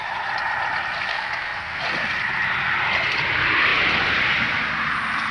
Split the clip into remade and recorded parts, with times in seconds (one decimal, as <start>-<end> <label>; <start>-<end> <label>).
0.0-1.1 recorded; 1.1-1.8 remade; 1.8-5.3 recorded